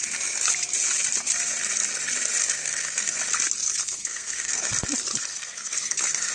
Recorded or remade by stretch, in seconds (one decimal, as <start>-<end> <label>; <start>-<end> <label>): 0.0-2.4 recorded; 2.4-3.2 remade; 3.2-3.6 recorded; 3.6-4.7 remade; 4.7-5.3 recorded; 5.3-6.3 remade